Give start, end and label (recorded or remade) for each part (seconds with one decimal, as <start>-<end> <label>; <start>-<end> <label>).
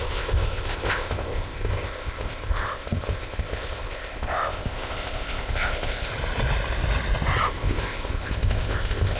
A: 0.0-6.1 remade; 6.1-7.4 recorded; 7.4-9.2 remade